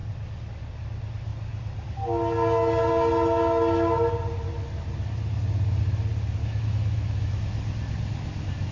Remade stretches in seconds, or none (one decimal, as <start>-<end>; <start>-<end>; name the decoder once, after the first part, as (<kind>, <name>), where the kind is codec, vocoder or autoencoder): 6.4-7.4 (autoencoder, DAC-VAE)